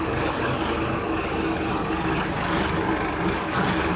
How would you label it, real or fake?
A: fake